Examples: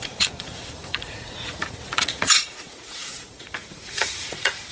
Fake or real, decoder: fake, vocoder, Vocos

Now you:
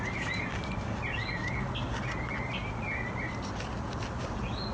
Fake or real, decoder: real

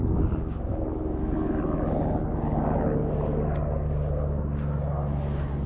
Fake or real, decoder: real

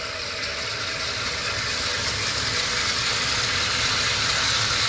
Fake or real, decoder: real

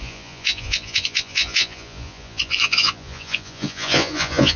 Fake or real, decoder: fake, vocoder, Vocos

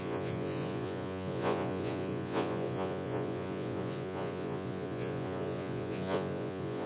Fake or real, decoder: fake, vocoder, Vocos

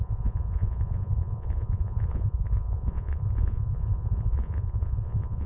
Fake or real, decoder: fake, vocoder, Vocos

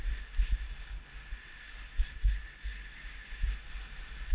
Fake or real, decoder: real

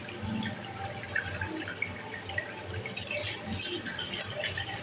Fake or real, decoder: real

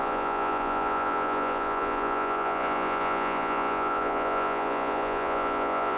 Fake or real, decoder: fake, vocoder, Vocos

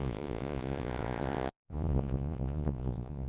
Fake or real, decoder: fake, vocoder, Vocos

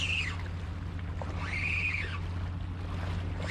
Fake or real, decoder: real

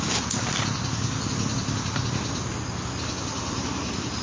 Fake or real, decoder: real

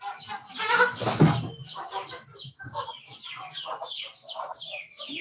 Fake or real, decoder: real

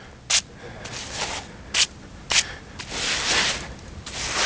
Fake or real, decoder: real